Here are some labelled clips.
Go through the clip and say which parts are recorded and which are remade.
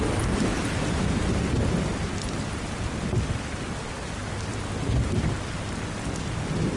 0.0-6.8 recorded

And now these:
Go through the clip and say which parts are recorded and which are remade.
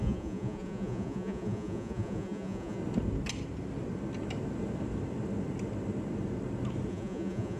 0.0-2.8 remade; 2.8-6.9 recorded; 6.9-7.6 remade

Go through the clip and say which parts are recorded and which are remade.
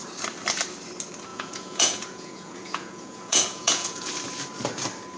0.0-1.3 recorded; 1.3-4.1 remade; 4.1-5.2 recorded